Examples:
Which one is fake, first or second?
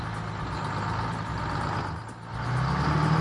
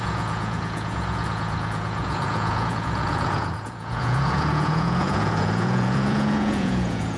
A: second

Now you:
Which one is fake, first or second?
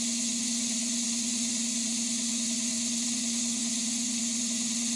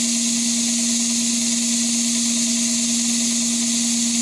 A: first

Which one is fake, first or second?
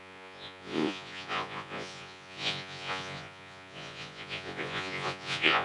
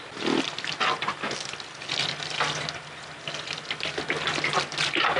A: first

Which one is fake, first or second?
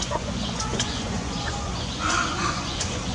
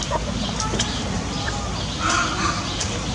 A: first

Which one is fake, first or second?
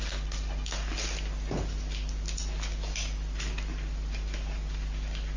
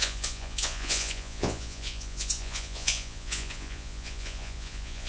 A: second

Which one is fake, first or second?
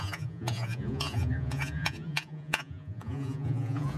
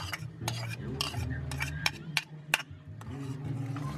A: first